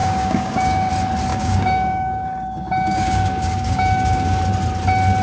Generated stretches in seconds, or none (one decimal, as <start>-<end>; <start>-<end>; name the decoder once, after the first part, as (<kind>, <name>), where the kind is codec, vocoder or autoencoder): 0.0-0.9 (codec, DAC); 1.3-4.4